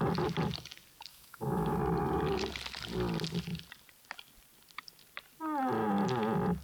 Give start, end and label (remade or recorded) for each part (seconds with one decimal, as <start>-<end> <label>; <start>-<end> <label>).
0.0-1.1 recorded; 1.1-1.8 remade; 1.8-6.6 recorded